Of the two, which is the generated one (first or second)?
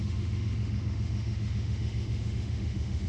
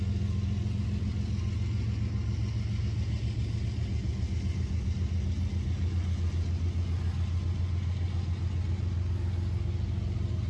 first